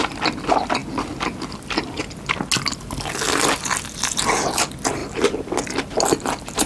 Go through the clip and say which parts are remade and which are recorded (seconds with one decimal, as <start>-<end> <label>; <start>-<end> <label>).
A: 0.0-6.7 recorded